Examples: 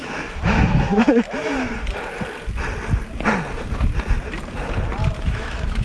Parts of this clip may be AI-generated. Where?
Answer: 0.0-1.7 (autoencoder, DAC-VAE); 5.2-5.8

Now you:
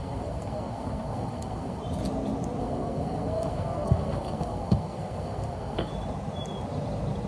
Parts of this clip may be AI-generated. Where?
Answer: 0.0-1.8 (codec, SNAC); 2.6-5.9

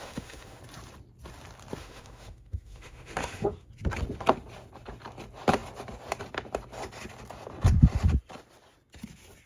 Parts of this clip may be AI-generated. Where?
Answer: 0.0-0.6 (autoencoder, DAC-VAE); 1.8-3.7

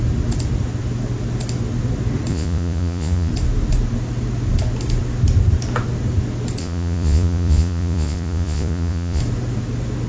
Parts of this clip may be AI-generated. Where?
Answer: 2.3-3.3 (vocoder, Vocos); 6.6-9.2